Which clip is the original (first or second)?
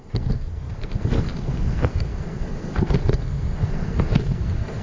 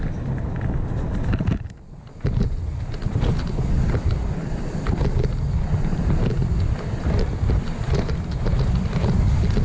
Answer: second